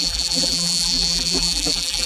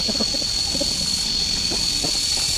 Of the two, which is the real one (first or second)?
second